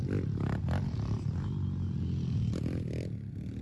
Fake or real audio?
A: real